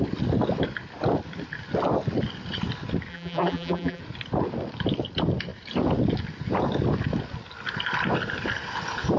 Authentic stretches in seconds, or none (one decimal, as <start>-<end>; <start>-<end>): 0.0-3.1; 4.0-9.2